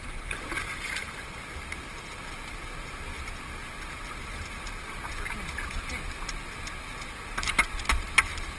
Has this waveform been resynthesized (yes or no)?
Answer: no